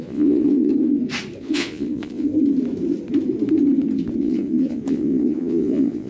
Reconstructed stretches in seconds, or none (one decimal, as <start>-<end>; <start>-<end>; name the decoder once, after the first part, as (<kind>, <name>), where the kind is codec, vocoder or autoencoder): 0.0-0.7 (vocoder, Vocos); 1.4-2.3; 4.2-6.1